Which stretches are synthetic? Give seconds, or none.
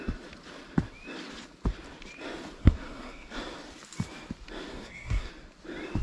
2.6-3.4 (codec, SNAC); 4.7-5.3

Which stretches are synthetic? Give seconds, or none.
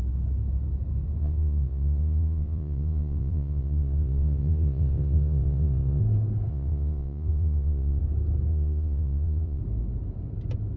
1.2-6.0 (vocoder, Vocos); 6.5-8.0; 8.5-9.6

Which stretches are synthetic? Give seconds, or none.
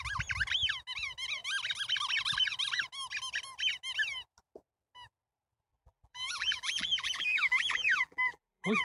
5.7-8.8 (vocoder, BigVGAN v2)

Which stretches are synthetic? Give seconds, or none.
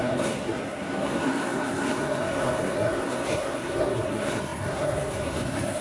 0.0-5.8 (codec, SNAC)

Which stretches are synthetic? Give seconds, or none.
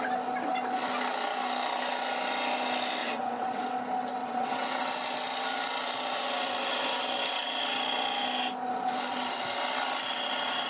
3.0-3.6 (vocoder, WaveNeXt); 4.2-4.9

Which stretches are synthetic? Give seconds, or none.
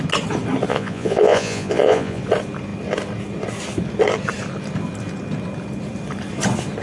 0.7-2.2 (vocoder, Vocos)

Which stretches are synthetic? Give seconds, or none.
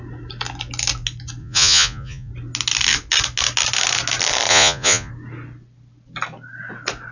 1.4-2.3 (vocoder, Vocos); 4.5-5.1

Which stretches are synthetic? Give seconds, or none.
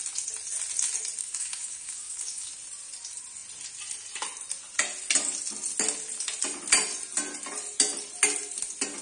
1.2-2.5 (codec, DAC)